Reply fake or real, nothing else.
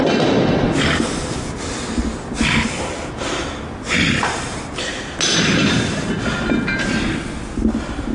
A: real